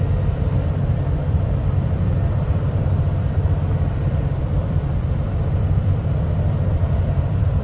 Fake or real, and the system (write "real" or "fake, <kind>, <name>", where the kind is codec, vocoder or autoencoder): fake, vocoder, BigVGAN v2